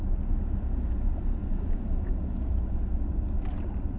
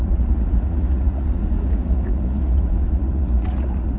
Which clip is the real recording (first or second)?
first